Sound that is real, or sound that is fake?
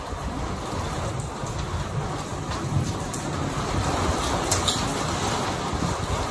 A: real